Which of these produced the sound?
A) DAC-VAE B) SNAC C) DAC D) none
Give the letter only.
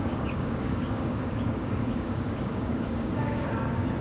C